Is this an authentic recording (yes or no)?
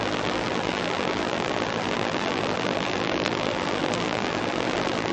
no